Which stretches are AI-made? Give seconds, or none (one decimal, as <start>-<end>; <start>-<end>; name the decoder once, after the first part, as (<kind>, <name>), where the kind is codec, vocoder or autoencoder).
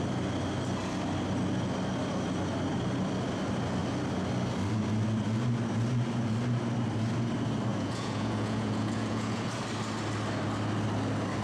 7.7-9.5 (vocoder, Vocos)